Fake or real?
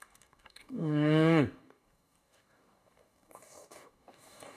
fake